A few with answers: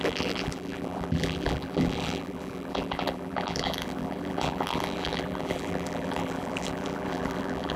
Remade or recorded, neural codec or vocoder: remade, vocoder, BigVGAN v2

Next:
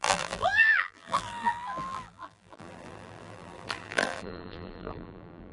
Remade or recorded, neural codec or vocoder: remade, vocoder, BigVGAN v2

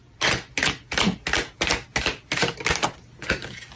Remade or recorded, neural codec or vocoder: recorded